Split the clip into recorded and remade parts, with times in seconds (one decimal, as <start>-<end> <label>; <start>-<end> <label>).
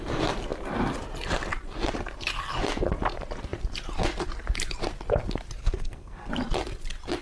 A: 0.0-5.6 recorded; 5.6-6.3 remade; 6.3-7.2 recorded